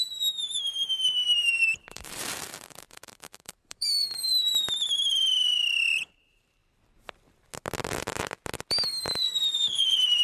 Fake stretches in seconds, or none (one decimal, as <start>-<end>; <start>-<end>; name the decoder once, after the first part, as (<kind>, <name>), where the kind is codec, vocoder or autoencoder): 0.0-6.6 (vocoder, BigVGAN v2); 9.1-10.2